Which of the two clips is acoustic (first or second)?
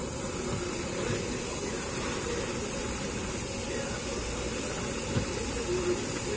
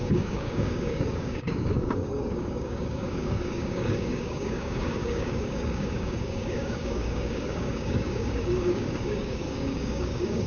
first